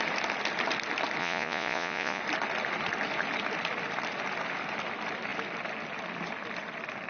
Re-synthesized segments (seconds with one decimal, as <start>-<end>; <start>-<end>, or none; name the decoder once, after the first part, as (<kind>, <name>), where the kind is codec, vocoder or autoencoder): 1.2-2.2 (vocoder, Vocos)